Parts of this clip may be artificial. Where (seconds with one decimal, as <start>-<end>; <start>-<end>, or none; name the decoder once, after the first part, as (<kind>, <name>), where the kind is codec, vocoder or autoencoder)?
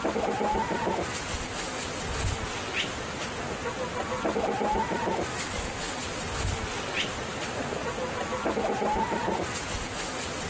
5.3-6.0 (codec, DAC)